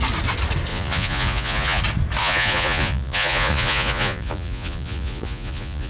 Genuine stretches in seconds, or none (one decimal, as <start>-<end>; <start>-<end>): 0.0-0.7; 1.8-2.2